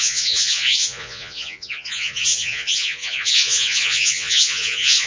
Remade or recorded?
remade